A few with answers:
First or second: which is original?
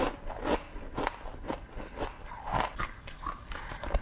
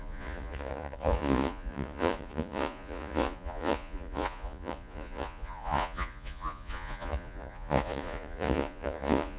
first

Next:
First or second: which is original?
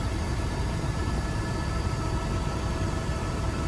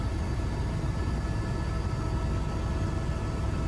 second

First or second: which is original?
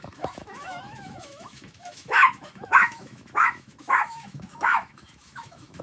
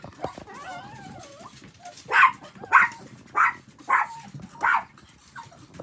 second